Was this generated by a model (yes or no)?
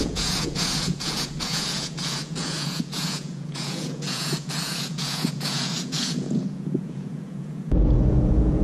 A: yes